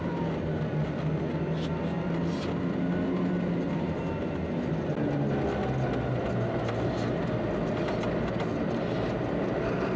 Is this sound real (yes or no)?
yes